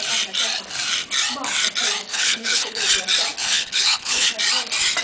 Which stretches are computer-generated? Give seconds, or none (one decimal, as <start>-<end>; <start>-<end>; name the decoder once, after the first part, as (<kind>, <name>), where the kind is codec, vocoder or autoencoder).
2.1-2.8 (codec, HILCodec); 3.4-4.3